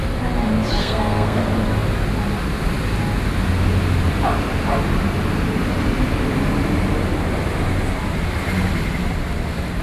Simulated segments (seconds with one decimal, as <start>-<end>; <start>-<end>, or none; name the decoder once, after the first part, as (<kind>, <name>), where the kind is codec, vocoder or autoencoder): 0.8-1.4 (codec, SNAC)